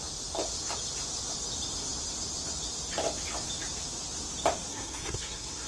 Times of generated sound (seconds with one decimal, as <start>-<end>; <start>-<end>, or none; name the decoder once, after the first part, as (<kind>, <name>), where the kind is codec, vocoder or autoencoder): 4.7-5.7 (codec, SNAC)